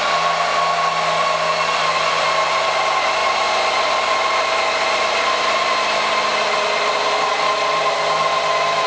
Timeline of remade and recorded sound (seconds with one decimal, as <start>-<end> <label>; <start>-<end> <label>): 0.0-8.9 recorded